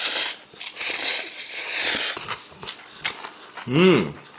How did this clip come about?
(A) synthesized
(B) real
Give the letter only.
B